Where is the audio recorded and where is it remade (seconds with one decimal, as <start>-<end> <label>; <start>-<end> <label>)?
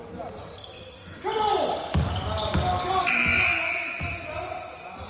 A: 0.0-5.1 recorded